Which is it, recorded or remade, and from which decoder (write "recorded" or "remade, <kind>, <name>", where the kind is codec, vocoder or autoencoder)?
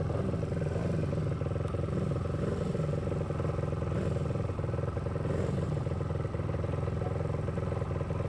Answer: recorded